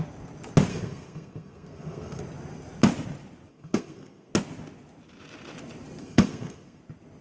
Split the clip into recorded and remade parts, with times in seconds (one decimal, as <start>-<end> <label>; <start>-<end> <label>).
0.0-0.7 recorded; 0.7-2.2 remade; 2.2-3.5 recorded; 3.5-4.3 remade; 4.3-6.0 recorded; 6.0-6.8 remade; 6.8-7.2 recorded